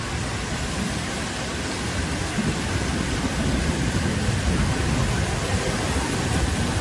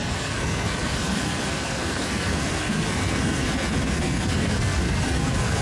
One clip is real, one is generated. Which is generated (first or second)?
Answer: second